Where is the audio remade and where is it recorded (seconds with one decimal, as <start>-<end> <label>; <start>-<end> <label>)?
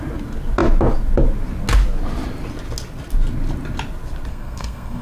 0.0-4.3 recorded; 4.3-5.0 remade